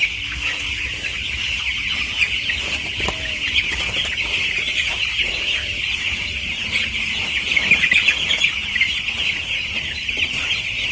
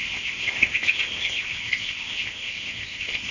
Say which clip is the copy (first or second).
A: second